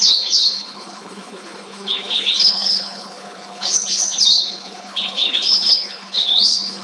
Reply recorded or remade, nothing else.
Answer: remade